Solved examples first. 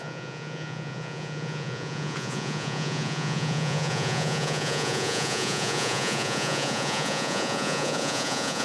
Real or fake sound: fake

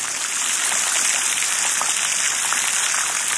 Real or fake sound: real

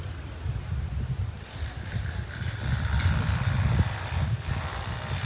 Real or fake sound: real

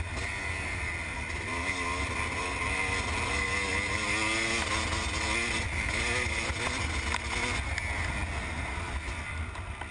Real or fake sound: real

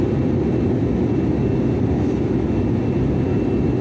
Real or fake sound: real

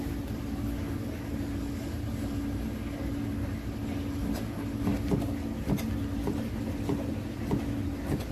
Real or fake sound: real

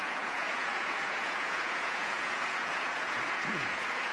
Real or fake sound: fake